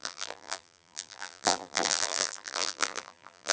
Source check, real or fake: fake